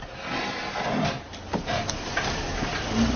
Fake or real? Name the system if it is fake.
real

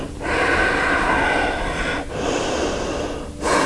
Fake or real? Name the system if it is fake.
real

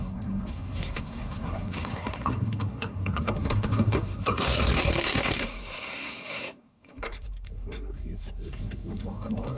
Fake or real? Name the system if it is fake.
fake, codec, SNAC